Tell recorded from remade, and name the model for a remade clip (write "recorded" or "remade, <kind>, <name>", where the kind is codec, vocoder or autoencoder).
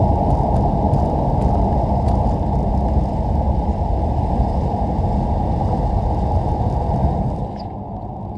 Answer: recorded